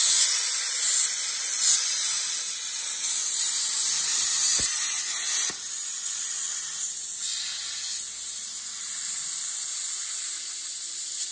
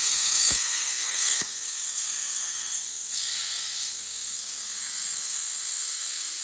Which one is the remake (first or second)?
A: second